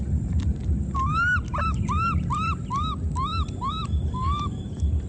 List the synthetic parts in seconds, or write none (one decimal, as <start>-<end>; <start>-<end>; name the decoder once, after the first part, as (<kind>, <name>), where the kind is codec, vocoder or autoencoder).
0.0-0.6 (vocoder, BigVGAN v2); 3.7-5.1